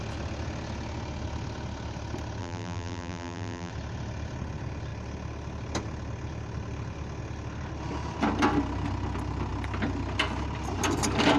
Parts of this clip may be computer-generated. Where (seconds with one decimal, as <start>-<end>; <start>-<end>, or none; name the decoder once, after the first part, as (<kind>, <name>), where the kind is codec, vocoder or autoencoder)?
2.4-3.7 (vocoder, BigVGAN v2)